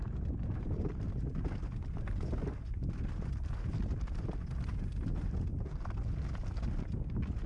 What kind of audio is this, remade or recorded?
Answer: recorded